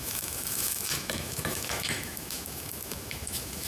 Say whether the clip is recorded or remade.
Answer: remade